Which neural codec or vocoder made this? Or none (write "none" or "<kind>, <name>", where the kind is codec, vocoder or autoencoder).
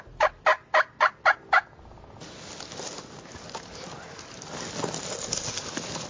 none